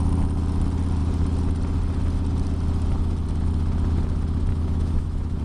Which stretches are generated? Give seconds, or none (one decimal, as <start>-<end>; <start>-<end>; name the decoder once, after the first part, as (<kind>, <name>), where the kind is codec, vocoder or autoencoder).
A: 4.5-5.4 (autoencoder, DAC-VAE)